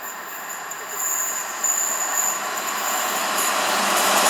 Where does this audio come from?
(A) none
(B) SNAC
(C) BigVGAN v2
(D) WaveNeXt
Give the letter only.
A